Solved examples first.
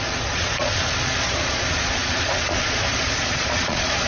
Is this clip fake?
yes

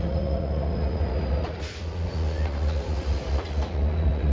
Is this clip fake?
yes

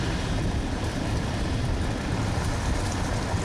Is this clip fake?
no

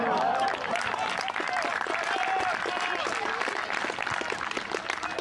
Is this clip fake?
no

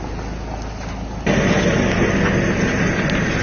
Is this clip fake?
no